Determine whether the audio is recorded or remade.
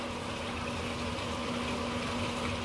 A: recorded